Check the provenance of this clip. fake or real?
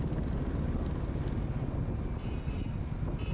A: real